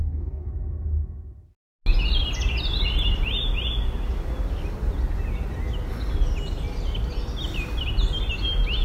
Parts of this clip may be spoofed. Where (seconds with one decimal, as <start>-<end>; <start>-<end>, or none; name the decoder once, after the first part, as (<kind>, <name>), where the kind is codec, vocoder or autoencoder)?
0.0-0.5 (codec, DAC)